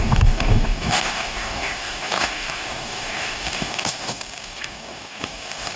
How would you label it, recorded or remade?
remade